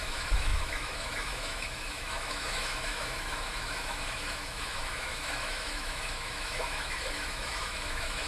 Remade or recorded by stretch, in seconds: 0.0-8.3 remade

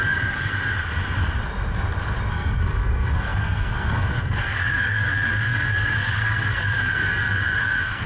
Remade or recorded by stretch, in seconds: 0.0-0.5 remade; 0.5-2.3 recorded; 2.3-8.1 remade

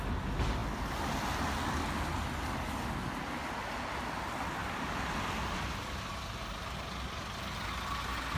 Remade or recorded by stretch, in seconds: 0.0-8.4 recorded

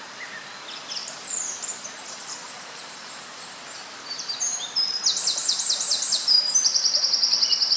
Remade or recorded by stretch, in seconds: 0.0-1.0 recorded; 1.0-4.4 remade; 4.4-5.4 recorded; 5.4-7.0 remade; 7.0-7.8 recorded

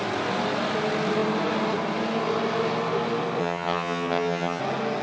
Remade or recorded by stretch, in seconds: 0.0-3.4 recorded; 3.4-4.6 remade; 4.6-5.0 recorded